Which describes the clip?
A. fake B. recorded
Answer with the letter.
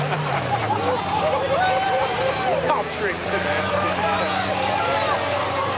A